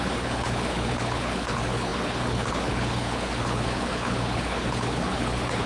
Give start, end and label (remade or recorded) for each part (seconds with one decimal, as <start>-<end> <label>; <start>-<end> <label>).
0.0-5.7 remade